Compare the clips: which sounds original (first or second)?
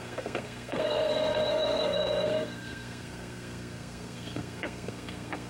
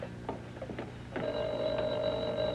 second